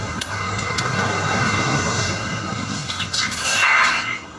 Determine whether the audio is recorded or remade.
remade